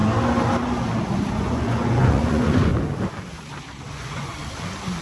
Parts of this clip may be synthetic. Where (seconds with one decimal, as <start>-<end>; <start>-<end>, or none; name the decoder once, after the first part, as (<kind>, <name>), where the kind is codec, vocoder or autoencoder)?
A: 1.3-2.7 (vocoder, Vocos); 3.9-4.4